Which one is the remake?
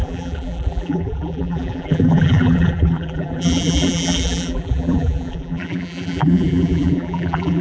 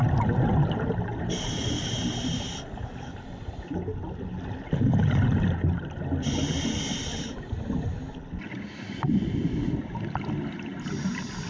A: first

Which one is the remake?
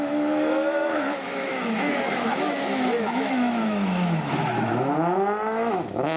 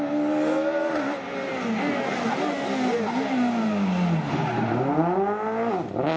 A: first